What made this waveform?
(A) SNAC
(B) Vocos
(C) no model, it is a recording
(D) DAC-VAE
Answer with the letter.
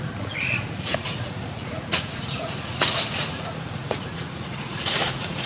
B